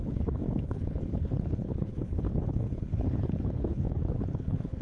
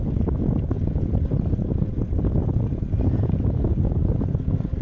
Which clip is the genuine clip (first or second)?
second